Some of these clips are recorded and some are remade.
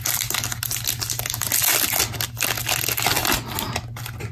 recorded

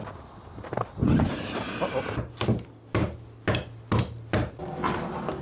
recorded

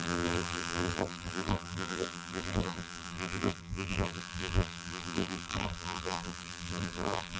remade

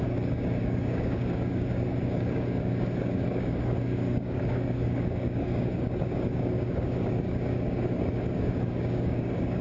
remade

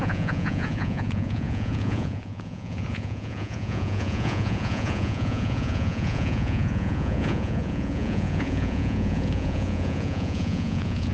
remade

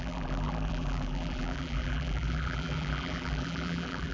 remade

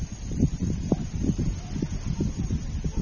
recorded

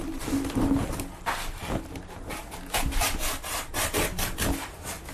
recorded